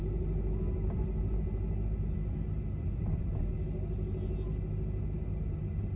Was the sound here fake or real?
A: real